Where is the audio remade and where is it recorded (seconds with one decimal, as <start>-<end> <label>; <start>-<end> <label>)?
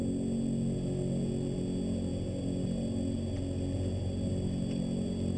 0.0-5.4 recorded